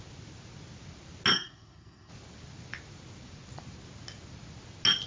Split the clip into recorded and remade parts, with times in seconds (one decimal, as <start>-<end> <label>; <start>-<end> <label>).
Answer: 0.0-1.3 recorded; 1.3-2.1 remade; 2.1-5.1 recorded